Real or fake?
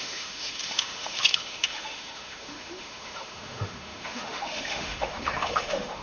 fake